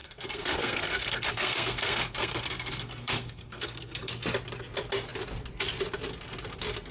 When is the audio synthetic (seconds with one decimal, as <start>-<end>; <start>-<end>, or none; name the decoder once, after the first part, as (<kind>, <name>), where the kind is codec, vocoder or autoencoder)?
0.0-4.1 (codec, SNAC)